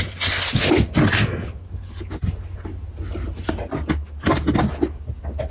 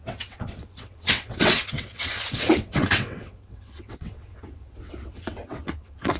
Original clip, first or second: first